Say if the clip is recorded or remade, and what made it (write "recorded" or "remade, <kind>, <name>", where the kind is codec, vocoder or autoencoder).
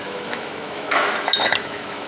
remade, autoencoder, DAC-VAE